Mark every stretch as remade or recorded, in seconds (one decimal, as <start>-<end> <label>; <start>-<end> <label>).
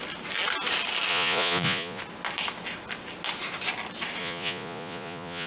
0.0-1.1 recorded; 1.1-2.0 remade; 2.0-4.2 recorded; 4.2-5.5 remade